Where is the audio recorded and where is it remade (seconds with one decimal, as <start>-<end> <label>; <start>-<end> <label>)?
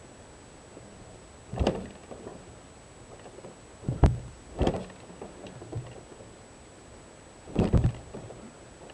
0.0-8.9 recorded